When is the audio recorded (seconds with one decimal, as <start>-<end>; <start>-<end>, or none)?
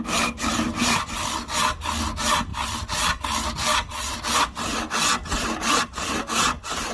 0.0-6.9